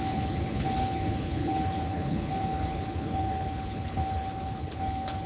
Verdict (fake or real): fake